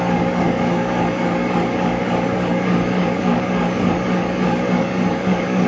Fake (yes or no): yes